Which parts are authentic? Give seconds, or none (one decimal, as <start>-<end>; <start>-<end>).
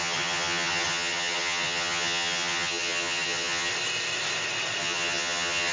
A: 3.7-4.8